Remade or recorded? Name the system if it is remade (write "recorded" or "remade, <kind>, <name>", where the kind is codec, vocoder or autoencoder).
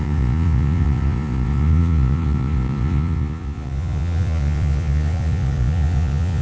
remade, vocoder, Vocos